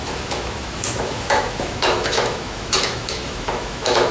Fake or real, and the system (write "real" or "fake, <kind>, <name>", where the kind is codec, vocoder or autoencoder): fake, autoencoder, DAC-VAE